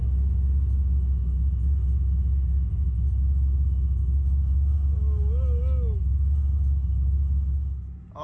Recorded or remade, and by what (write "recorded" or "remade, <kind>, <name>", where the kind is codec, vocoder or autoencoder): recorded